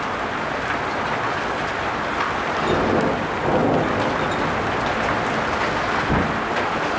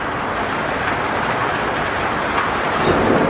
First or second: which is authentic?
first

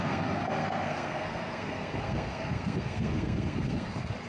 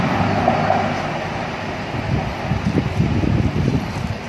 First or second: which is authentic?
second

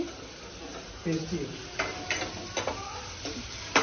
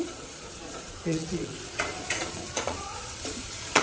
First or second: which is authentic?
first